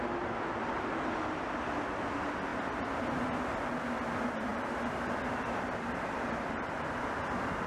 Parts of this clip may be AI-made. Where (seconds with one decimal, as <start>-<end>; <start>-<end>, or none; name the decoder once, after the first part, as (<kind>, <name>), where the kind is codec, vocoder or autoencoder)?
4.5-7.0 (vocoder, BigVGAN v2)

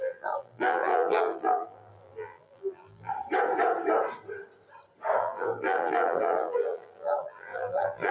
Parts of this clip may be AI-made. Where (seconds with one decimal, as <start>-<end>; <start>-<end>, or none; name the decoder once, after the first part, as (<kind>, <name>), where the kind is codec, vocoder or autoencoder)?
0.0-3.1 (vocoder, BigVGAN v2); 5.2-8.1

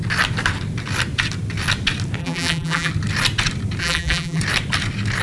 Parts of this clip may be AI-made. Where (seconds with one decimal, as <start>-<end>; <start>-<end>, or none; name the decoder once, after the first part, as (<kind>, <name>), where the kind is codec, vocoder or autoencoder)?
2.2-2.9 (vocoder, BigVGAN v2); 3.8-4.4

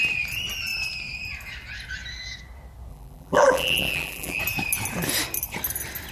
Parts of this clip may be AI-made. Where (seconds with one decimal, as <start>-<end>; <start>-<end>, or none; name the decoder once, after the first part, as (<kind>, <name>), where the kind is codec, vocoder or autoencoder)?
2.9-4.4 (vocoder, BigVGAN v2)

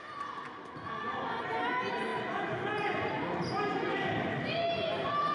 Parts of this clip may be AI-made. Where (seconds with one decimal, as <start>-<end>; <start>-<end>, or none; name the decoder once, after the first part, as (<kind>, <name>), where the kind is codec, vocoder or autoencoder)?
none